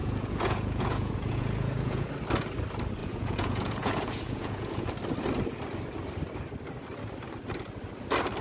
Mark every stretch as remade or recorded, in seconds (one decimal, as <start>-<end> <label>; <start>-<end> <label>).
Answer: 0.0-2.1 remade; 2.1-3.0 recorded; 3.0-4.9 remade; 4.9-8.4 recorded